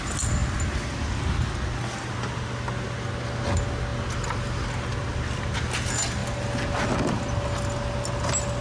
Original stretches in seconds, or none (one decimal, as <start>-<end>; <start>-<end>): 0.0-8.6